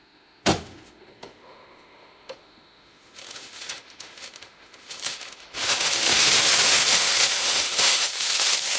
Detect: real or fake fake